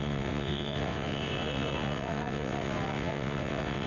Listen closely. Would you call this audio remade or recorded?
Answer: remade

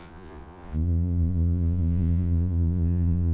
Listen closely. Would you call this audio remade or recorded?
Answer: remade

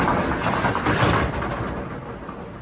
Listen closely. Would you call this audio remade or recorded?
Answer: recorded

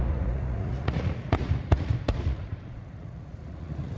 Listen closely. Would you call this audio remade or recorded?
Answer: remade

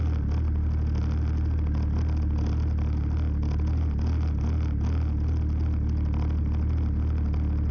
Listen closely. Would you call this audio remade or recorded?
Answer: recorded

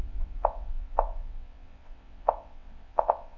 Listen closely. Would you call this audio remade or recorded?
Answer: remade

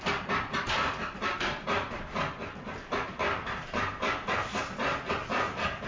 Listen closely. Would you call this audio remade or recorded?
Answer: recorded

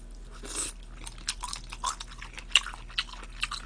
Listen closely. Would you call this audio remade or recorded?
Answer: recorded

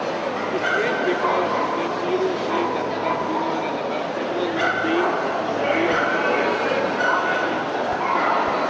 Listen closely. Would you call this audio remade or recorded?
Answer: recorded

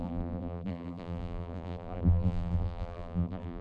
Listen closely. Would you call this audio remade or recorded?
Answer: remade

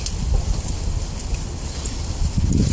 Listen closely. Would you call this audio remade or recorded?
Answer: recorded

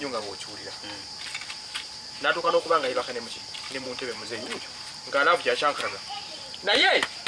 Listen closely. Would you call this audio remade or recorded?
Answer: remade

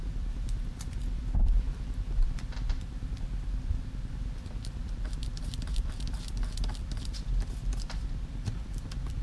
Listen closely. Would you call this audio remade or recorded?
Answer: remade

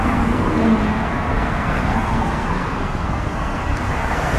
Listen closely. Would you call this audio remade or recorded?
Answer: remade